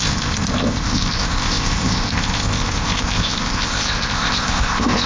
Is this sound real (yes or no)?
no